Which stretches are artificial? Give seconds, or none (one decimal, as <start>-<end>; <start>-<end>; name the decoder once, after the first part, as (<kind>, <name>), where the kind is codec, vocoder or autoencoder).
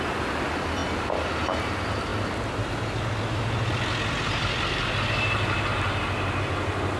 none